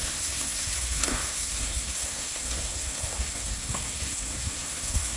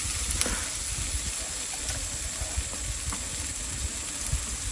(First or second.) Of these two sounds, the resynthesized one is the first